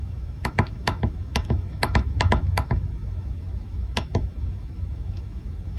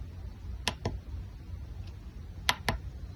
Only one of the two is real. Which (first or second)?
second